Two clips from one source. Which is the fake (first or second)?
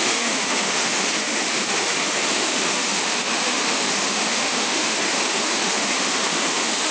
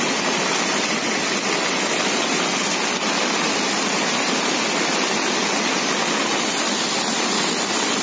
first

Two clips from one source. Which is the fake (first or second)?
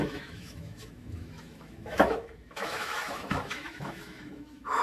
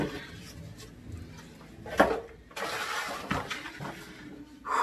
first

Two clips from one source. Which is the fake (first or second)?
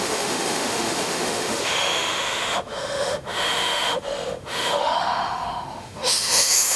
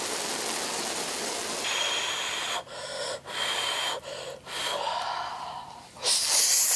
first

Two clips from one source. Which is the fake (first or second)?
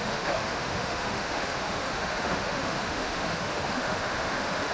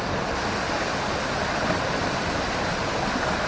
first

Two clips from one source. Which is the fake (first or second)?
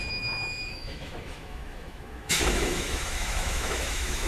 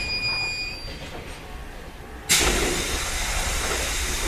first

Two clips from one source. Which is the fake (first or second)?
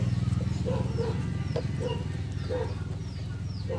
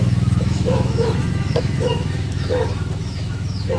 second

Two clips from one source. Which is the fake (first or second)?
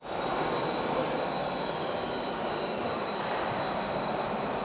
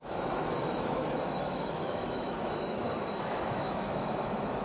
second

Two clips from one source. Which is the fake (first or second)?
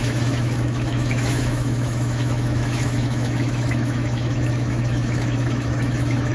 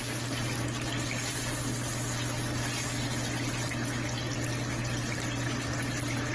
first